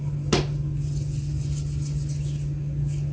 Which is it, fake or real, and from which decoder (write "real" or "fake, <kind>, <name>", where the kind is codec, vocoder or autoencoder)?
real